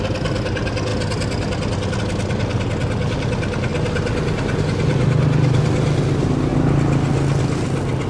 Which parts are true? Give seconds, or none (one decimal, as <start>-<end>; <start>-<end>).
0.0-8.1